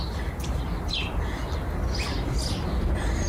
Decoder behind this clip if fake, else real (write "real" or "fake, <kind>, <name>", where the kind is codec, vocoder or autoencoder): real